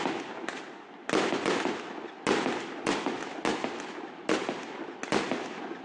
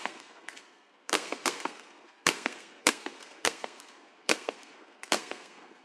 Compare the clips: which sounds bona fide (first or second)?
first